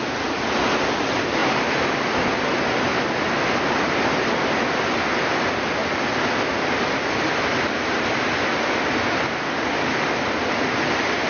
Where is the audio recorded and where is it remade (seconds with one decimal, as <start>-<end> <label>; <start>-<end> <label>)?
0.0-11.3 recorded